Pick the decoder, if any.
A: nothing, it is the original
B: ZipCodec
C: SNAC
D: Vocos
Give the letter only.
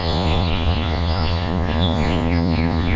D